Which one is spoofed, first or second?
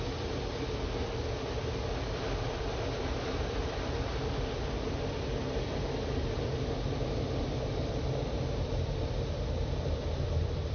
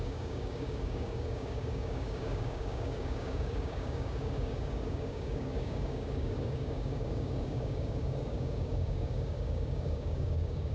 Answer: second